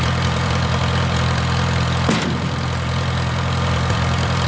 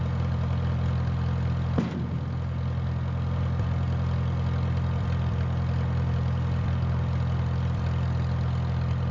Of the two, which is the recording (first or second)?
second